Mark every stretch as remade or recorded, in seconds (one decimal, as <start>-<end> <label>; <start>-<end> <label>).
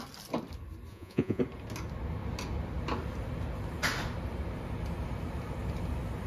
0.0-0.9 recorded; 0.9-1.4 remade; 1.4-6.3 recorded